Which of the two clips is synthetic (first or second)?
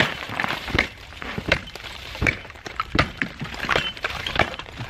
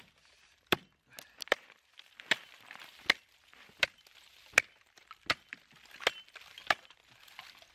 first